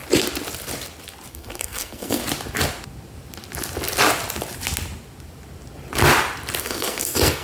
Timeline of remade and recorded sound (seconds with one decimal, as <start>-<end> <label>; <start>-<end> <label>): 0.0-1.3 recorded; 1.3-2.2 remade; 2.2-6.6 recorded; 6.6-7.4 remade